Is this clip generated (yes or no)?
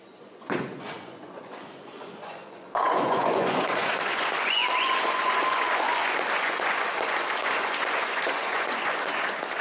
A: yes